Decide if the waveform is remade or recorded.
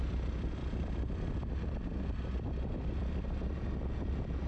remade